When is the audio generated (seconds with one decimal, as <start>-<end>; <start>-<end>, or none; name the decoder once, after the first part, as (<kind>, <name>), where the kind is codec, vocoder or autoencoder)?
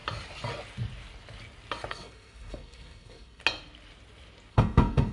1.9-3.4 (codec, SNAC); 4.5-5.1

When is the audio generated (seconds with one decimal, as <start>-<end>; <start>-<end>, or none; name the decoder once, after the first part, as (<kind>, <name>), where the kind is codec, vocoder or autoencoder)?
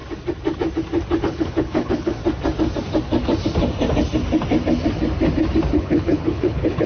1.2-2.2 (codec, HILCodec); 5.8-6.9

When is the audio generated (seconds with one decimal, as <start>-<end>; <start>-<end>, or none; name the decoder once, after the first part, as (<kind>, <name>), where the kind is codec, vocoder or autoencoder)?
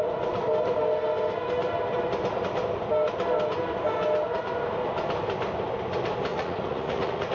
6.3-7.3 (vocoder, Vocos)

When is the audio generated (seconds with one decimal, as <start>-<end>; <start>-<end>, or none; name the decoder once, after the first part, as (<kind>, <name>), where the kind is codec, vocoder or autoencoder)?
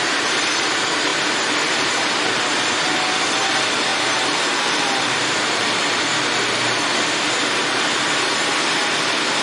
3.9-7.6 (vocoder, BigVGAN v2)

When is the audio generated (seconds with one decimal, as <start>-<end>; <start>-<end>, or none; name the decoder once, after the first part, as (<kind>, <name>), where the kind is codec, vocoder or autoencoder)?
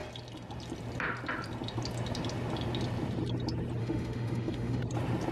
3.8-4.8 (autoencoder, DAC-VAE)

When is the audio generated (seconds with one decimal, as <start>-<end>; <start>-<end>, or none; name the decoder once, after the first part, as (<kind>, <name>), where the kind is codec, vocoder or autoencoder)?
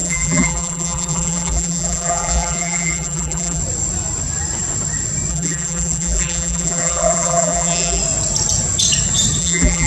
0.0-3.6 (vocoder, BigVGAN v2); 5.3-8.0; 9.4-9.9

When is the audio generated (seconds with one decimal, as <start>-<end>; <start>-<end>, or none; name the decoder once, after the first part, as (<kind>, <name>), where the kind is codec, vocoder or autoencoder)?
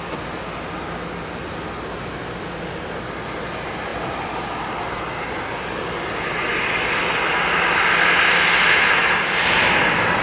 none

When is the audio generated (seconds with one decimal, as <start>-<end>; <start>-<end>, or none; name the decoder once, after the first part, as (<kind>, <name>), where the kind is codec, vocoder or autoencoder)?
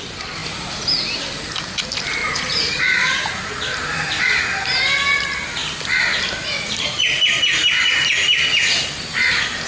2.2-4.4 (vocoder, BigVGAN v2)